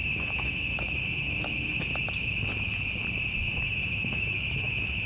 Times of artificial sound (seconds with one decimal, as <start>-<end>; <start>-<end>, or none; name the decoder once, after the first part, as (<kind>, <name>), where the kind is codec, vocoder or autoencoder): 0.0-2.0 (autoencoder, DAC-VAE); 3.5-5.1